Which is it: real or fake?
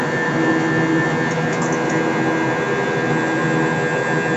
real